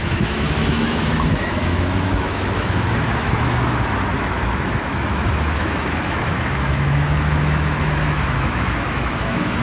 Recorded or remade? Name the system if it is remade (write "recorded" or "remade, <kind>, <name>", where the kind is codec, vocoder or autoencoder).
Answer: remade, autoencoder, DAC-VAE